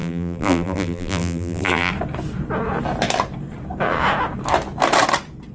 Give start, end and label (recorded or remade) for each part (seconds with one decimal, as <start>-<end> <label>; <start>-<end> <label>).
0.0-1.9 remade; 1.9-5.5 recorded

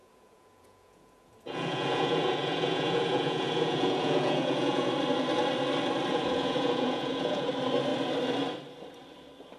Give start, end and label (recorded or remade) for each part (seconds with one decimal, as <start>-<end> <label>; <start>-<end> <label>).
0.0-4.9 remade; 4.9-6.1 recorded; 6.1-7.5 remade; 7.5-9.6 recorded

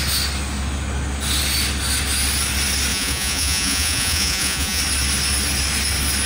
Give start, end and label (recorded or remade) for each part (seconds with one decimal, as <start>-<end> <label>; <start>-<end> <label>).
0.0-2.9 recorded; 2.9-4.8 remade; 4.8-6.3 recorded

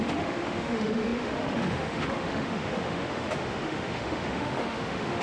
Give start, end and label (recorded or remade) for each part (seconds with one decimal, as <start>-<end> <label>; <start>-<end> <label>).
0.0-5.2 remade

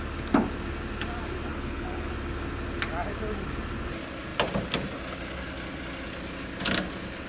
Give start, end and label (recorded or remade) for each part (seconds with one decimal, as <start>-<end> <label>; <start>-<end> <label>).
0.0-1.5 recorded; 1.5-2.1 remade; 2.1-7.3 recorded

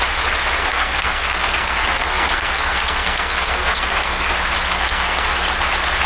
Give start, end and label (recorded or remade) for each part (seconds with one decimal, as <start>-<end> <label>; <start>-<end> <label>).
0.0-0.6 recorded; 0.6-4.3 remade; 4.3-4.7 recorded; 4.7-5.3 remade; 5.3-6.1 recorded